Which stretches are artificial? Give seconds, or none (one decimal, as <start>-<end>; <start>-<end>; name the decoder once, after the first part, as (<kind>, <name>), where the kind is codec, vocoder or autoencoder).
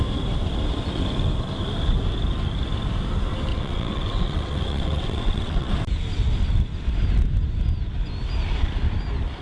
3.5-5.7 (vocoder, WaveNeXt)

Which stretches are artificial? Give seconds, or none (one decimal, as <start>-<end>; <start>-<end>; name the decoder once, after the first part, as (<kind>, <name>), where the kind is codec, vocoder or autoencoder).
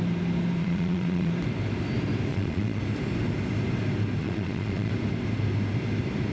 0.6-1.3 (vocoder, Vocos); 2.3-2.8; 4.2-4.9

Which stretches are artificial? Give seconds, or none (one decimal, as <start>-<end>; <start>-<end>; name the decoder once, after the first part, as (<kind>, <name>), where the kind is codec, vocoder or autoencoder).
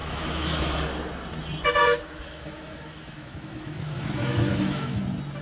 0.0-0.7 (autoencoder, DAC-VAE); 1.8-5.0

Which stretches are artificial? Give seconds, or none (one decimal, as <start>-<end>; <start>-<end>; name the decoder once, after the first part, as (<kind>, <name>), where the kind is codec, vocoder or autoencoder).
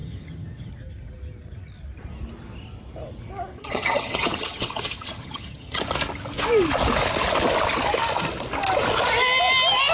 0.0-0.7 (vocoder, HiFi-GAN); 3.5-5.8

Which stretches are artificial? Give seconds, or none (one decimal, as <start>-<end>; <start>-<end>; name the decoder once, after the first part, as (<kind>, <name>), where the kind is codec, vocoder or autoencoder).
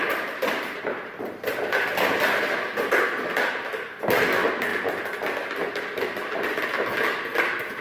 none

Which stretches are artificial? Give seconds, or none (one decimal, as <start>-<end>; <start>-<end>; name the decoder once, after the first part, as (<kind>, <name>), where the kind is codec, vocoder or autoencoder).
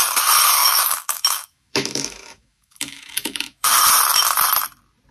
0.6-3.7 (autoencoder, DAC-VAE)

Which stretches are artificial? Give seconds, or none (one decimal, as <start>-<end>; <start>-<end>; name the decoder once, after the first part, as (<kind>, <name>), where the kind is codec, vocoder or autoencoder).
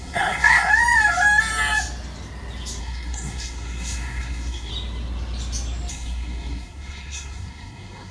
0.0-0.7 (codec, SNAC); 2.8-4.7; 5.9-8.1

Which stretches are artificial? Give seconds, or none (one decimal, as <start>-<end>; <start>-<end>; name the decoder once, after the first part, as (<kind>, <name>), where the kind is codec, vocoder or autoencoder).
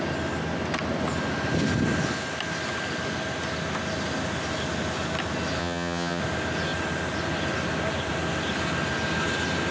5.6-6.2 (vocoder, HiFi-GAN)